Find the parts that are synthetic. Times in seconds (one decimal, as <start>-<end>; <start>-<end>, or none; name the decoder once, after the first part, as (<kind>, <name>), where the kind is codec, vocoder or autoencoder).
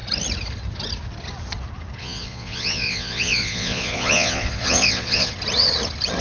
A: 2.0-5.3 (vocoder, Vocos)